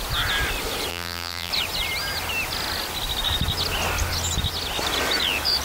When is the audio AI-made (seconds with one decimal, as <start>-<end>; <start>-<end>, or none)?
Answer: 0.9-1.5